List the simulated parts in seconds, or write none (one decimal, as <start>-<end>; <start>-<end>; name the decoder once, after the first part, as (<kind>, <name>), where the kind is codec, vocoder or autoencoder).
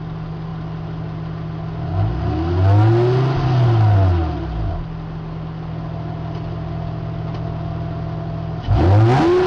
none